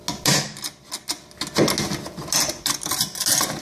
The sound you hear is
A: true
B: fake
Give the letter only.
A